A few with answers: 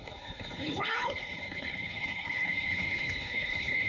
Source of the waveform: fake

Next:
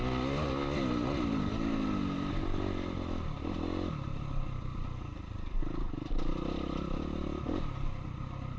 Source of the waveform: real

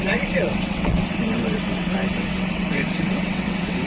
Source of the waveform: fake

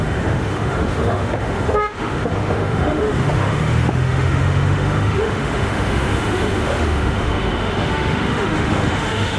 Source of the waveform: fake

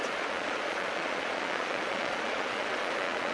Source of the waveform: fake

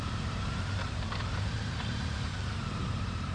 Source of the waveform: fake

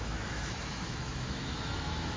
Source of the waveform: fake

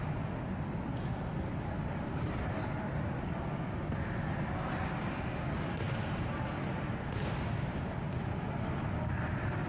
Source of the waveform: real